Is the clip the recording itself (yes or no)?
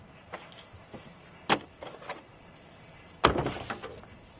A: yes